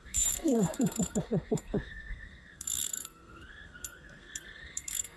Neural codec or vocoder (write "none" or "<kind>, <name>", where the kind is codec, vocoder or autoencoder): codec, SNAC